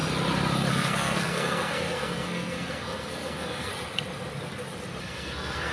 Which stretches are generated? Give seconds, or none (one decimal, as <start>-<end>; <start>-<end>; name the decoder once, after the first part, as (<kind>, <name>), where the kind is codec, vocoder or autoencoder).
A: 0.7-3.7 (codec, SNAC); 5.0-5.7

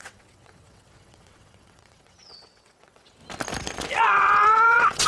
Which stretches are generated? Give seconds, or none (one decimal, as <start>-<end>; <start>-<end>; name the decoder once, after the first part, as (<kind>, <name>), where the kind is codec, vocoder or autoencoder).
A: 0.0-3.2 (vocoder, WaveNeXt); 4.0-5.1

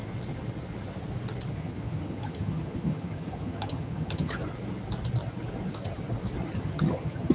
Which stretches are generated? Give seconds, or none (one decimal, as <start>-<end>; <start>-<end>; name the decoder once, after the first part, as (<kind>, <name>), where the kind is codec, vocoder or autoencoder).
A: 1.5-4.4 (vocoder, HiFi-GAN); 6.6-7.3

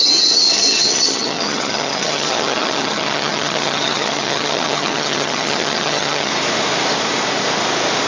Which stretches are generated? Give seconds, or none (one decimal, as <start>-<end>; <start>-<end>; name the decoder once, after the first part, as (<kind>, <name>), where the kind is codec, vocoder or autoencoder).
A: 0.0-6.3 (vocoder, HiFi-GAN)

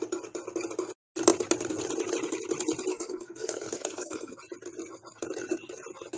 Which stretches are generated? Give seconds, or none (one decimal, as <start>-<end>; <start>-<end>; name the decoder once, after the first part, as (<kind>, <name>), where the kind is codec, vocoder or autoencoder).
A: 2.9-4.3 (codec, SNAC)

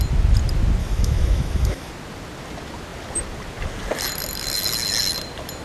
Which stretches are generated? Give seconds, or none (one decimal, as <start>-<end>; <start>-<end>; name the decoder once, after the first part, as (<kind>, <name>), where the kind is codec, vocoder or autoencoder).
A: 0.8-1.9 (autoencoder, DAC-VAE)